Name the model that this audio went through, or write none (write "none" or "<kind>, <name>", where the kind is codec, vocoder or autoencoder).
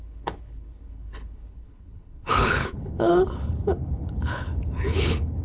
codec, HILCodec